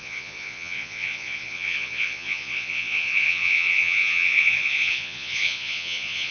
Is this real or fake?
fake